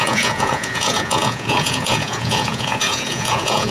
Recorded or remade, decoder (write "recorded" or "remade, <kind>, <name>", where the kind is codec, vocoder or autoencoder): remade, vocoder, Vocos